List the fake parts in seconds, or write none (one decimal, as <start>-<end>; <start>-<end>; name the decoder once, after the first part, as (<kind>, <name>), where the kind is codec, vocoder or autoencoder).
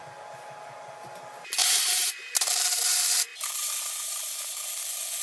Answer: 1.6-2.6 (vocoder, BigVGAN v2); 3.3-4.6